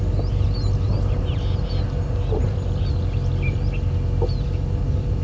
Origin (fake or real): real